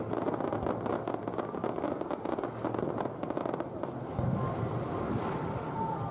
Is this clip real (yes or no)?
yes